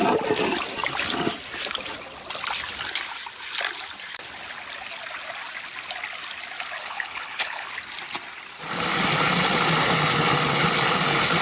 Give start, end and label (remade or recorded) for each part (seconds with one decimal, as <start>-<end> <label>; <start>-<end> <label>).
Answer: 0.0-6.8 recorded; 6.8-7.7 remade; 7.7-11.4 recorded